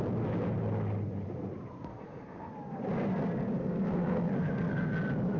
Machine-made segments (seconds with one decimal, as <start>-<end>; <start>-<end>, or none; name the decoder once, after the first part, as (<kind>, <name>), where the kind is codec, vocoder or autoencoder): 1.9-2.5 (codec, SNAC); 3.6-4.9